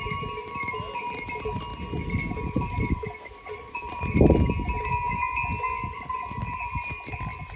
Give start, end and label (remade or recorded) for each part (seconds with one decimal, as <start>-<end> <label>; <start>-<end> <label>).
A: 0.0-1.7 recorded; 1.7-4.2 remade; 4.2-7.6 recorded